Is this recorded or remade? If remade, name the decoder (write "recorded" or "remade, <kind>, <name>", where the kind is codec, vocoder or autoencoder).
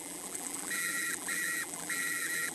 remade, vocoder, BigVGAN v2